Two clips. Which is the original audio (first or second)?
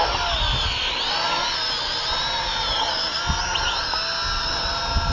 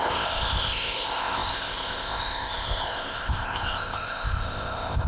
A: first